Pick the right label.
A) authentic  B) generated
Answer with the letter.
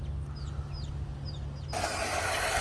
A